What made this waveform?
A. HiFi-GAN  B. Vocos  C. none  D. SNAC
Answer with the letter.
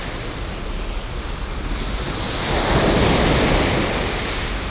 C